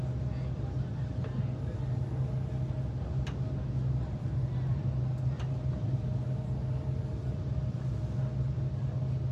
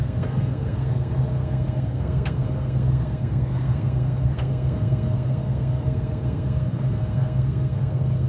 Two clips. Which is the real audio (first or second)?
first